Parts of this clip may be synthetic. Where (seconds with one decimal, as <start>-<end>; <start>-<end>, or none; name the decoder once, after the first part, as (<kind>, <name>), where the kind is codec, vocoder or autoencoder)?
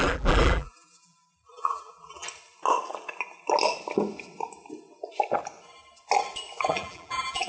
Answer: 0.0-2.2 (vocoder, BigVGAN v2); 6.7-7.5